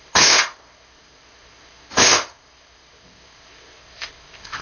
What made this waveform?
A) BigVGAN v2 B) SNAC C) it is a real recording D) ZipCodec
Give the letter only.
D